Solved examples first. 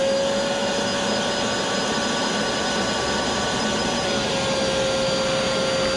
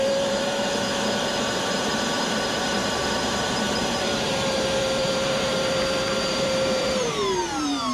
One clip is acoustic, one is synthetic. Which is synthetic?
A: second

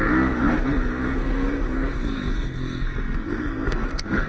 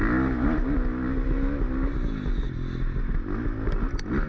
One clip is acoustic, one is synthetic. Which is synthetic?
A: first